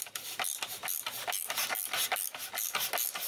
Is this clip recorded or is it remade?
recorded